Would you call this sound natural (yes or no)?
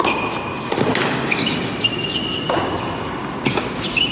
yes